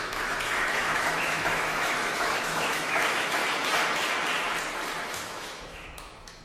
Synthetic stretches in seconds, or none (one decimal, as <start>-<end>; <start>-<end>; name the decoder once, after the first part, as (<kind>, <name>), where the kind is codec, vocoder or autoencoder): 0.0-3.4 (autoencoder, DAC-VAE); 5.0-6.4